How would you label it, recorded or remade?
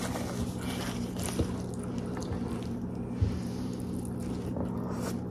recorded